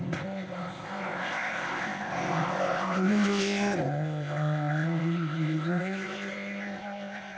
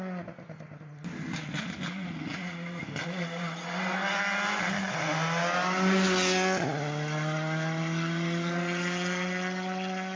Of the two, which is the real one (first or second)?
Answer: second